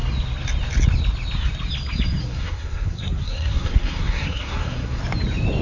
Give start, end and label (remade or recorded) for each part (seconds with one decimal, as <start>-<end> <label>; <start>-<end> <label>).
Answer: 0.0-2.2 recorded; 2.2-5.0 remade; 5.0-5.6 recorded